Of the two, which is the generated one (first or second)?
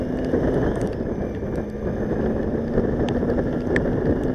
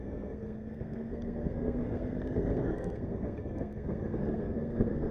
second